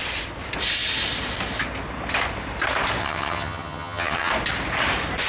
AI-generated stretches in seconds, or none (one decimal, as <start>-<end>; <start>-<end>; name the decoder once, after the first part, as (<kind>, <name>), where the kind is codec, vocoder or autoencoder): 3.0-4.3 (vocoder, HiFi-GAN)